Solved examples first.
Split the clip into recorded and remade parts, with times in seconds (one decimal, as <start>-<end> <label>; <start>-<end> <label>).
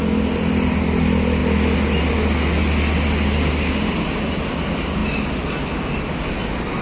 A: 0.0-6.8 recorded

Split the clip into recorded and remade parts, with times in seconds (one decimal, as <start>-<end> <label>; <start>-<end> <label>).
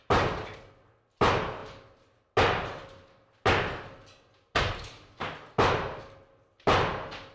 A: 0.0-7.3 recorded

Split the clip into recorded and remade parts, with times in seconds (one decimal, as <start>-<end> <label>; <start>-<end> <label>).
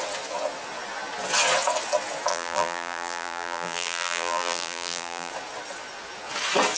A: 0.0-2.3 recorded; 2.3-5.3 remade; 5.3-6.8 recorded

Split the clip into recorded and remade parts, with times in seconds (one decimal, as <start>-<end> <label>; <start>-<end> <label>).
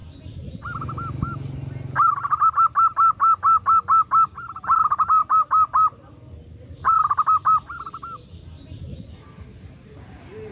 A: 0.0-10.5 recorded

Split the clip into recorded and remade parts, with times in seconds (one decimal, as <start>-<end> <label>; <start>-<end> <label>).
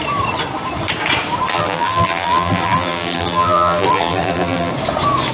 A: 0.0-1.5 recorded; 1.5-4.7 remade; 4.7-5.3 recorded